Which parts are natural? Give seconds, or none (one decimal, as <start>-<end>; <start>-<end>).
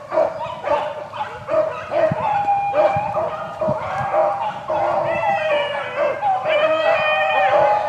0.0-7.9